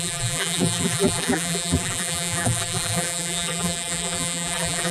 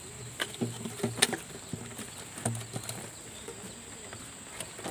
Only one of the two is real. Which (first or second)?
second